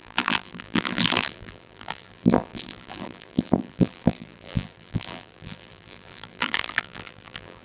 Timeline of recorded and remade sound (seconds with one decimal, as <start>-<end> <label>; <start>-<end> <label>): 0.0-7.6 remade